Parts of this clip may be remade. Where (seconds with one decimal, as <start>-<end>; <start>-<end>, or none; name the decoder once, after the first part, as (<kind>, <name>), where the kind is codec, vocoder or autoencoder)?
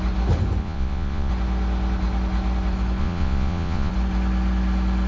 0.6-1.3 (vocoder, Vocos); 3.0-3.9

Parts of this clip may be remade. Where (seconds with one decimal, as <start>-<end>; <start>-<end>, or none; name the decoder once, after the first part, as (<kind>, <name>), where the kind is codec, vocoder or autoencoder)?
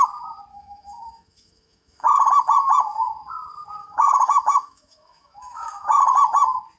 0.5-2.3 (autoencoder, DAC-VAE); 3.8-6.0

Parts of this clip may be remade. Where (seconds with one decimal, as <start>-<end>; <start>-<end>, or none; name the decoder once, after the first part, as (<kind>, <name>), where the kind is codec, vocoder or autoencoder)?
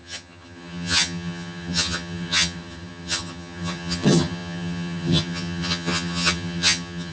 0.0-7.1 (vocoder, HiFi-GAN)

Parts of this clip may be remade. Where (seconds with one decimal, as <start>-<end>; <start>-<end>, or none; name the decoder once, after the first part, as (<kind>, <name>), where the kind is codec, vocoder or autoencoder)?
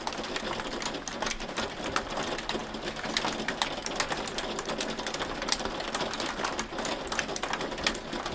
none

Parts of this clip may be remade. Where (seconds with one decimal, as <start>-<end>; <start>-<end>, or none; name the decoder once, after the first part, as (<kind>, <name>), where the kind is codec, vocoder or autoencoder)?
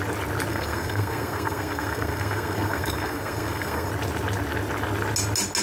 0.5-3.9 (codec, SNAC)